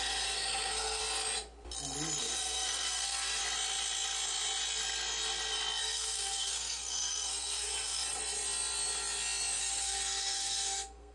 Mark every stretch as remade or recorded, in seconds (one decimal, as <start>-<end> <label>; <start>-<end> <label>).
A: 0.0-1.0 remade; 1.0-2.2 recorded; 2.2-3.4 remade; 3.4-5.8 recorded; 5.8-8.0 remade; 8.0-9.6 recorded; 9.6-11.1 remade